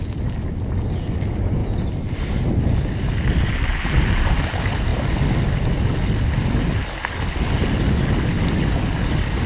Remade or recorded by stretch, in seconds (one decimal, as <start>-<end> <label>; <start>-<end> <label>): 0.0-9.5 recorded